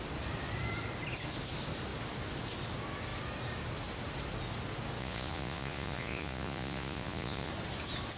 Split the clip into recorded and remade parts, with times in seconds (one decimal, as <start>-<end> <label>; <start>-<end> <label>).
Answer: 0.0-5.0 recorded; 5.0-7.5 remade; 7.5-8.2 recorded